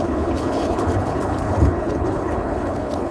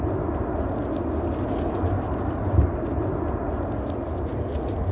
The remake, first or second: first